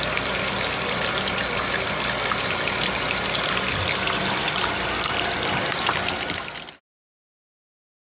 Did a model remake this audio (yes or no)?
no